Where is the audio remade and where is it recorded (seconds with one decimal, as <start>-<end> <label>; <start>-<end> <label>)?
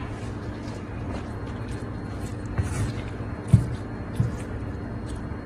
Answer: 0.0-5.5 recorded